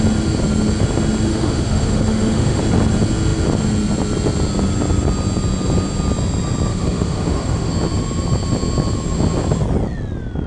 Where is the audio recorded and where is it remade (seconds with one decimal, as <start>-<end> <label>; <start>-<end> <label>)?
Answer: 0.0-1.3 recorded; 1.3-2.6 remade; 2.6-6.7 recorded; 6.7-7.7 remade; 7.7-10.5 recorded